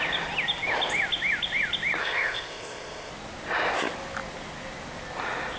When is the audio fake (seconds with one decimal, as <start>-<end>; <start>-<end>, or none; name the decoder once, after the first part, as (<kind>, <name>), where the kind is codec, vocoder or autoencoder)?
2.0-3.1 (codec, ZipCodec)